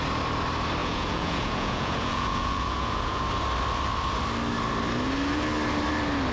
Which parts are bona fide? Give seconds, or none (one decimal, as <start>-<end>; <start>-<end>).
0.0-0.8; 3.2-6.3